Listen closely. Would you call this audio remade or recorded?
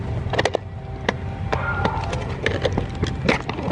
recorded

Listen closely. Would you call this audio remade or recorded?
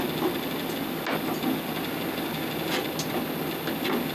recorded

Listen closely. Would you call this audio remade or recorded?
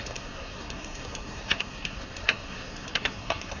remade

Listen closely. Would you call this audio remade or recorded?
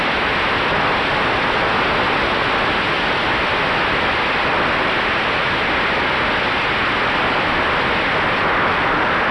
recorded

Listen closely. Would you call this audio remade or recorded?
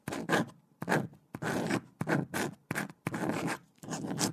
recorded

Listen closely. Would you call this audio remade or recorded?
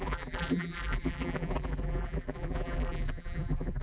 remade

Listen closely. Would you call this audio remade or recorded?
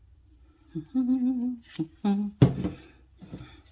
recorded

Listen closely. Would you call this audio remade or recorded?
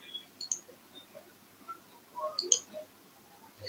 recorded